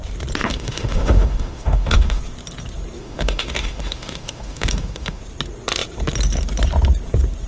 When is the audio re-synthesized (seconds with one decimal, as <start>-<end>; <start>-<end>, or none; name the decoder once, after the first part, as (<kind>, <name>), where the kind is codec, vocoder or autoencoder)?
0.4-2.2 (autoencoder, DAC-VAE); 3.0-5.2